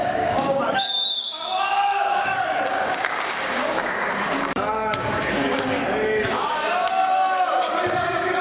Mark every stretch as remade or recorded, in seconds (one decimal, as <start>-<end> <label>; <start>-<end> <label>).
0.0-8.4 remade